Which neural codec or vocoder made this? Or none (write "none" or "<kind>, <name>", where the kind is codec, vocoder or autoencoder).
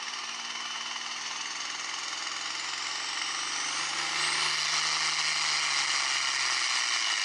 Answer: none